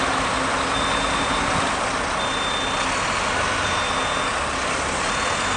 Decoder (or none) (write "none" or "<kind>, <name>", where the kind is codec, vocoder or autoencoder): none